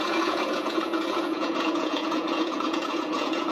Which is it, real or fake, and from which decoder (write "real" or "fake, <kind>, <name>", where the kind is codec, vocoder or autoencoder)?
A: fake, vocoder, Vocos